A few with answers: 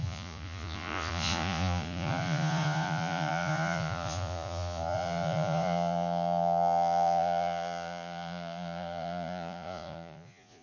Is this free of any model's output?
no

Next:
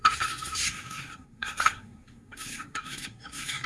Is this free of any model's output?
no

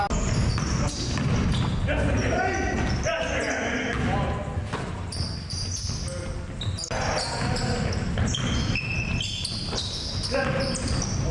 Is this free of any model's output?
yes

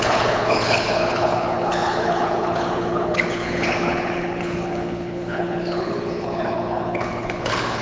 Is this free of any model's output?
no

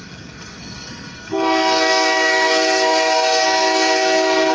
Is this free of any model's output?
no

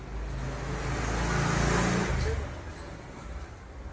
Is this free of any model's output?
yes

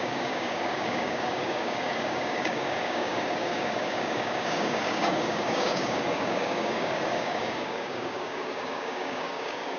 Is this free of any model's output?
no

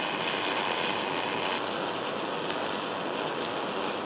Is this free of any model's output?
yes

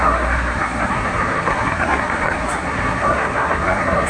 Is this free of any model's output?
no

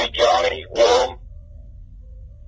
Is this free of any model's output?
no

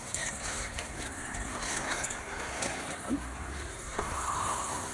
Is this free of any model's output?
no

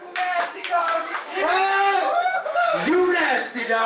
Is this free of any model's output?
no